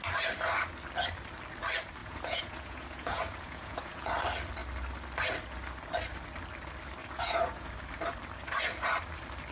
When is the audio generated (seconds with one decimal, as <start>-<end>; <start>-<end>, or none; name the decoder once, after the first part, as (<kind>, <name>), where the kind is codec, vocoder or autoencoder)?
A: 2.0-4.1 (vocoder, Vocos); 7.0-7.7